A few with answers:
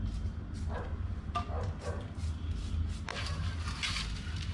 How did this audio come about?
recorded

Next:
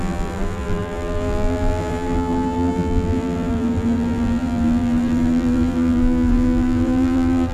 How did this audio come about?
remade